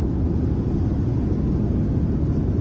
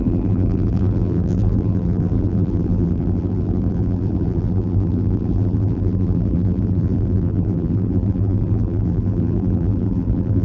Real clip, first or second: first